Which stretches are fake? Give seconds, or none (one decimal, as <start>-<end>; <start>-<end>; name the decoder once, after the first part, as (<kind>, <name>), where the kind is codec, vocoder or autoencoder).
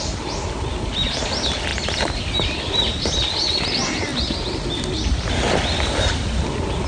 none